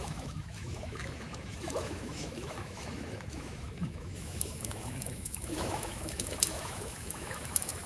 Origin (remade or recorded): remade